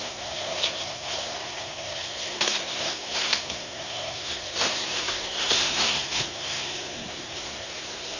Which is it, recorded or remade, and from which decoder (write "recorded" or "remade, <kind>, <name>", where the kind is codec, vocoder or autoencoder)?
remade, codec, SNAC